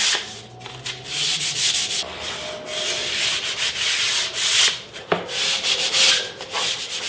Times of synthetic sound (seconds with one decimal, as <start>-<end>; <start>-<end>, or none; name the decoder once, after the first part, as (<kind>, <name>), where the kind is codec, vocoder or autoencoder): none